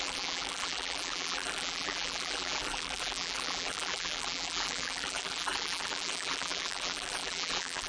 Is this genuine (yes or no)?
no